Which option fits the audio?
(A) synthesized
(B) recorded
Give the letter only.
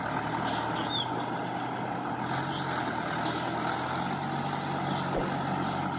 B